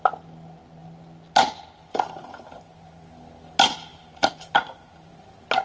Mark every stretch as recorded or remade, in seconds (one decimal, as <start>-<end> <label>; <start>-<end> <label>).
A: 0.0-3.9 recorded; 3.9-5.1 remade; 5.1-5.6 recorded